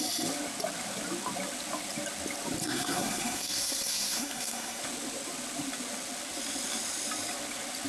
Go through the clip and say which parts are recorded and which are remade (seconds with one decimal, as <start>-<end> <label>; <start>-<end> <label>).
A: 0.0-2.6 recorded; 2.6-4.8 remade; 4.8-7.9 recorded